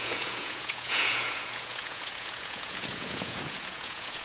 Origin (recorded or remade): remade